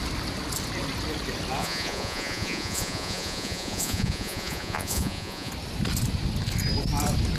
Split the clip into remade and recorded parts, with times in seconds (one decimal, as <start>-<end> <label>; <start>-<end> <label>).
0.0-1.6 recorded; 1.6-5.5 remade; 5.5-7.4 recorded